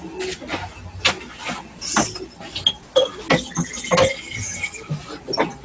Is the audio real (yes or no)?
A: yes